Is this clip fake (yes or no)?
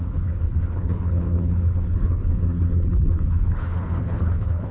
yes